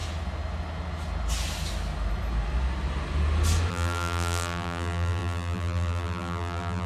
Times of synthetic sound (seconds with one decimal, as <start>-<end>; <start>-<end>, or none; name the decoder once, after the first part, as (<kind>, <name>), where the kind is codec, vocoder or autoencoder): 3.7-6.9 (vocoder, BigVGAN v2)